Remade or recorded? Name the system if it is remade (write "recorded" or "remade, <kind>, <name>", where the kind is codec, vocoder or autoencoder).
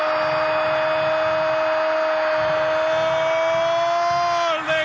recorded